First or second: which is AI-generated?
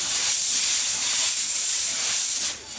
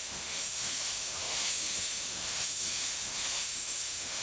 second